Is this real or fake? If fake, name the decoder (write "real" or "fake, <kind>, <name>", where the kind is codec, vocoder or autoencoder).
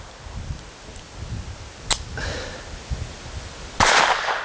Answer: real